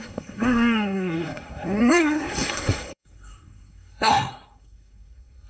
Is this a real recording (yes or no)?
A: no